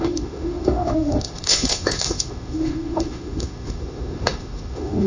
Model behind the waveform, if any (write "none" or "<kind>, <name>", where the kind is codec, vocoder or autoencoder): autoencoder, DAC-VAE